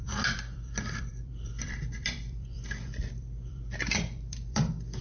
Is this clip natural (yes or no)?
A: no